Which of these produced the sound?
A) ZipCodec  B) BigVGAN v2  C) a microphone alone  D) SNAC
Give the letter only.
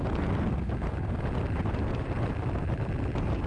C